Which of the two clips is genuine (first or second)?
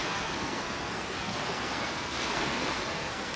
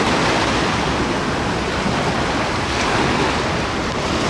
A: second